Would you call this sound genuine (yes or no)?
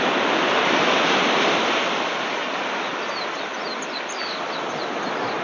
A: yes